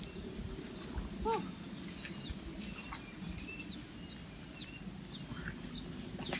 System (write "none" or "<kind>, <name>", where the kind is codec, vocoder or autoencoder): none